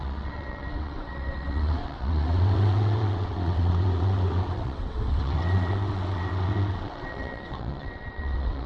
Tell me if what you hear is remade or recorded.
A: remade